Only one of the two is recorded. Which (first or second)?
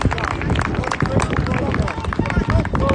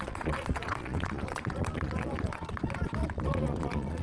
first